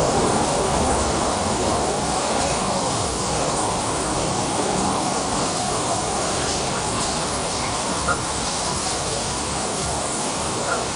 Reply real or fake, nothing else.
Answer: fake